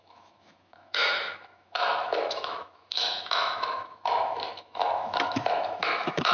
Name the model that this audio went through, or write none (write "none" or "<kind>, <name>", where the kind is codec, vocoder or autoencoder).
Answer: autoencoder, DAC-VAE